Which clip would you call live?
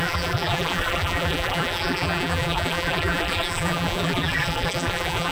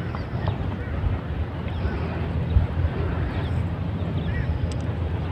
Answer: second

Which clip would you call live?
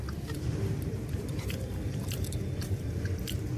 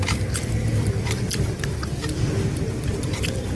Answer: second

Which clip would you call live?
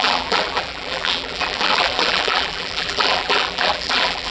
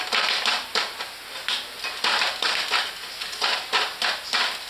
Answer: second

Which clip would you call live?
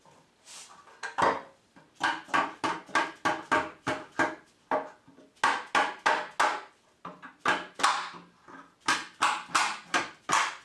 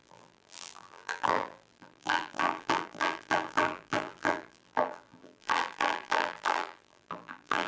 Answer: first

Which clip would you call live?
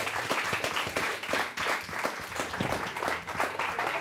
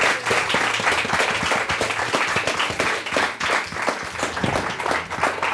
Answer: second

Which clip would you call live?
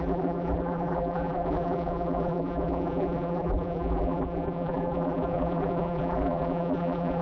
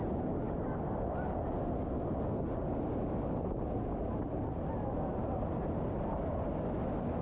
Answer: second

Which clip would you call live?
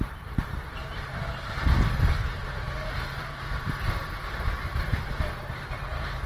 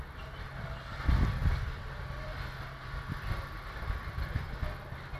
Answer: second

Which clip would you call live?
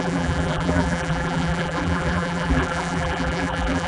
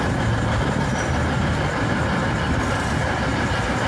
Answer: second